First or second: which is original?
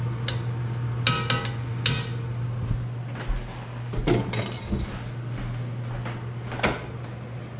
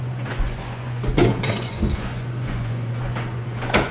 first